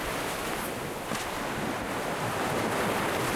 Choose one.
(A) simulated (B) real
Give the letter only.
B